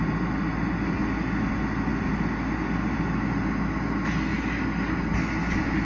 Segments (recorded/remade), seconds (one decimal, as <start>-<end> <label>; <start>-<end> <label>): 0.0-5.8 recorded